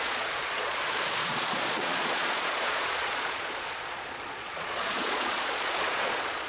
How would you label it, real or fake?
fake